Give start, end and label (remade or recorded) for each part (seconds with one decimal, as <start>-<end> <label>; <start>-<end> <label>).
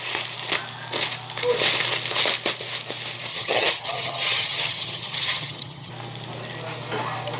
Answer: 0.0-3.3 recorded; 3.3-5.9 remade; 5.9-7.4 recorded